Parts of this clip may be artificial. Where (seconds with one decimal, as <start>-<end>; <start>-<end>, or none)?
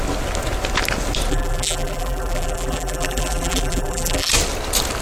1.3-4.3